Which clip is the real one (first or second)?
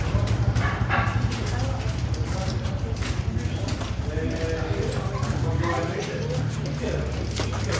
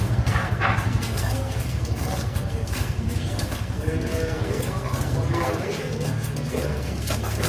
first